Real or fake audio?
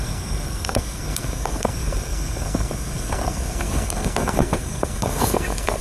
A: fake